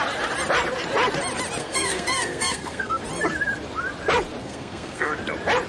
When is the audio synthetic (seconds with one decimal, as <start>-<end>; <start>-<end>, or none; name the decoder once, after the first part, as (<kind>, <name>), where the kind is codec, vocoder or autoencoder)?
1.6-3.0 (codec, SNAC); 4.4-5.1